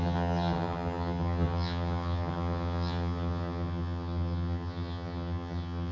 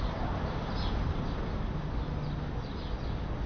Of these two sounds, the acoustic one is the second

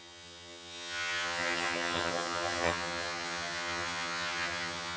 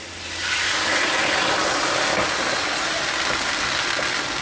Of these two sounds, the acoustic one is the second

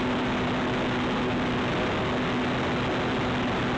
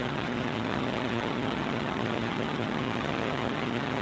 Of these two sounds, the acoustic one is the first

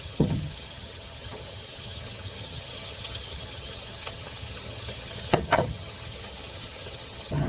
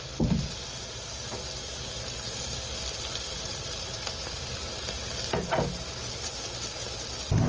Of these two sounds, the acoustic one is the second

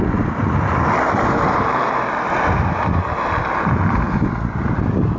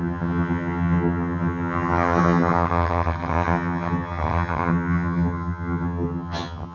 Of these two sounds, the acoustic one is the first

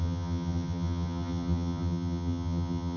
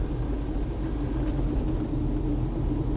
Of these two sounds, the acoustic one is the second